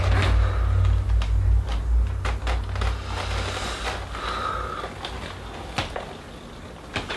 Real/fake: real